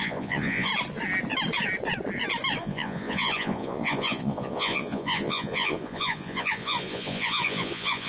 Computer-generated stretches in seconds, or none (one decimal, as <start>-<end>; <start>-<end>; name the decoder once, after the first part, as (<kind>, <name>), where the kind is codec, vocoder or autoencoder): 0.0-0.7 (vocoder, Vocos); 2.6-8.1